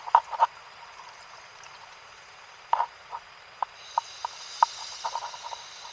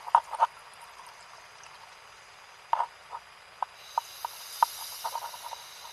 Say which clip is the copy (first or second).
first